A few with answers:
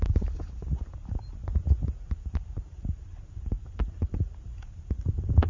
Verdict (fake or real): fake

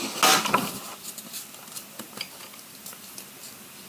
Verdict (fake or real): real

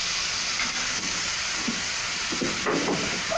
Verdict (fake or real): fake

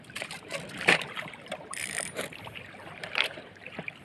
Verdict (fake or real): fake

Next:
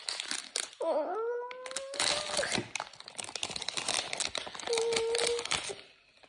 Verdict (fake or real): real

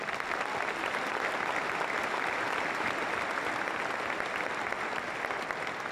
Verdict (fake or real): real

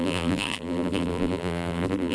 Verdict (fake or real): fake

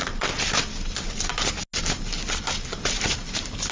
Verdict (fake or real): real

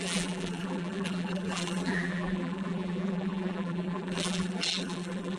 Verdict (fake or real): fake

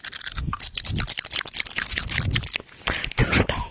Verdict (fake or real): fake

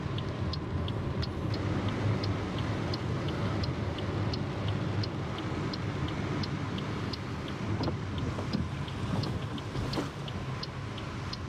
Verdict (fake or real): real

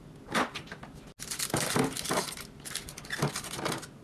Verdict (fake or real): real